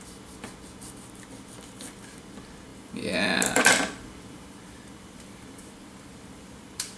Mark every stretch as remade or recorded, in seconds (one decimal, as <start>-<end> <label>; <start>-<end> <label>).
0.0-2.7 recorded; 2.7-7.0 remade